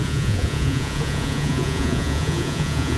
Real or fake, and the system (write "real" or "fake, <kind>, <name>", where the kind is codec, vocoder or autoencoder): fake, vocoder, Vocos